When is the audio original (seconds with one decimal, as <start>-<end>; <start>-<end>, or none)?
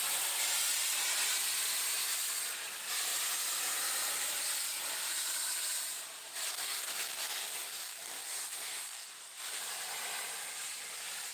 0.0-6.5; 9.6-11.3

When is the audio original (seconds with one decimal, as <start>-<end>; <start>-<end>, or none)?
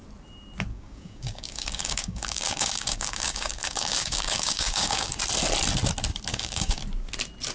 0.0-0.7; 5.2-6.3; 6.8-7.5